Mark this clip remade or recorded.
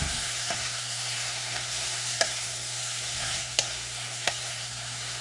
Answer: remade